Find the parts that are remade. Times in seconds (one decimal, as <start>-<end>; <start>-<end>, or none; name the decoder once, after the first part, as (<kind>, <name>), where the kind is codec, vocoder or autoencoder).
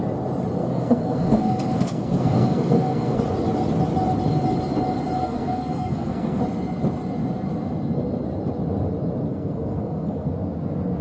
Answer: 0.6-3.2 (codec, SNAC); 5.2-6.4; 9.3-10.3